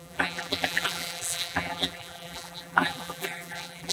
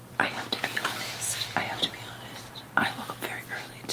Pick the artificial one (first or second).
first